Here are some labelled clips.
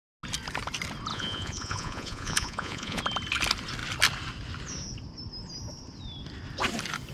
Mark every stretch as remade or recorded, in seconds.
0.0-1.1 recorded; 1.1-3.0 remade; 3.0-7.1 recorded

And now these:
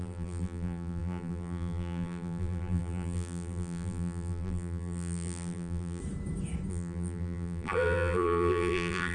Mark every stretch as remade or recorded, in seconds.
0.0-6.0 remade; 6.0-6.7 recorded; 6.7-9.1 remade

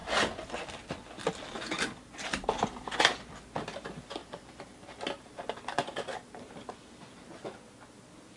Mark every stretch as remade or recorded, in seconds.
0.0-4.2 recorded; 4.2-7.3 remade; 7.3-8.4 recorded

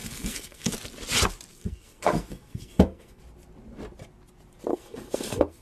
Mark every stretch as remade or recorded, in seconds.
0.0-0.7 remade; 0.7-1.5 recorded; 1.5-3.2 remade; 3.2-4.7 recorded; 4.7-5.6 remade

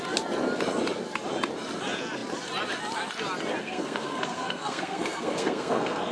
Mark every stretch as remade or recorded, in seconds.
0.0-3.6 recorded; 3.6-6.1 remade